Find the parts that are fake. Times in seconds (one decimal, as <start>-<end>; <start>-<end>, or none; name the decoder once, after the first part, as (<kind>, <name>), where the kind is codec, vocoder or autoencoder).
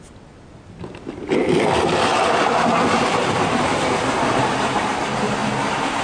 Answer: 1.4-5.0 (vocoder, BigVGAN v2); 5.4-6.0